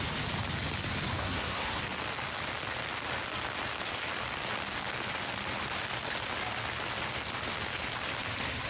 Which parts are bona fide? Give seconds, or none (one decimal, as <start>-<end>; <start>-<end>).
0.0-1.2; 1.8-8.7